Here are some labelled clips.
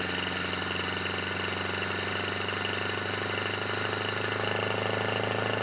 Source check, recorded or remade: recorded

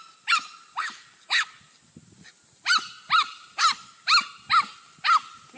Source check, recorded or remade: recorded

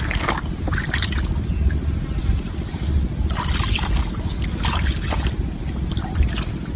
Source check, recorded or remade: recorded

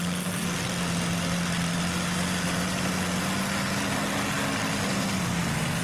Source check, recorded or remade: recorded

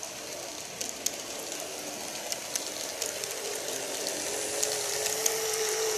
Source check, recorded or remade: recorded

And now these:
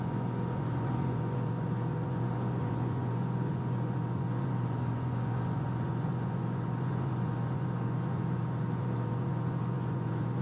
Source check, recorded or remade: remade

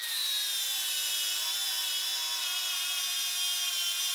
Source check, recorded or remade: recorded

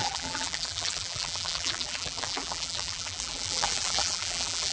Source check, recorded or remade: remade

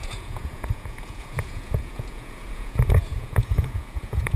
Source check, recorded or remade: remade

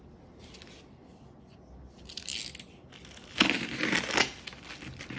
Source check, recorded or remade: recorded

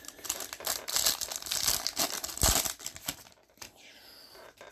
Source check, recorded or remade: recorded